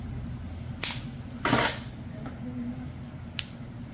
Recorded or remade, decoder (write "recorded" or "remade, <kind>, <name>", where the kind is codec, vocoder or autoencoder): recorded